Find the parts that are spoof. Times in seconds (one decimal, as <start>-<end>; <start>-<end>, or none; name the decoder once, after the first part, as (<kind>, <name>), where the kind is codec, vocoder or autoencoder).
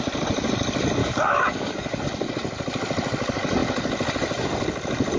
1.0-2.0 (codec, DAC)